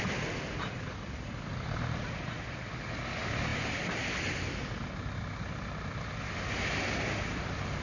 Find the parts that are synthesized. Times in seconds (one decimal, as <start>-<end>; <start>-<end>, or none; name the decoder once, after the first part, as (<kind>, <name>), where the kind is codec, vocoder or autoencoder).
none